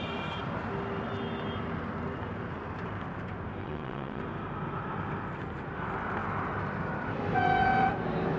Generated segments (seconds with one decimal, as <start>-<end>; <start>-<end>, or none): 3.6-4.2